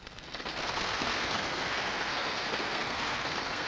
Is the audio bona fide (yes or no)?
no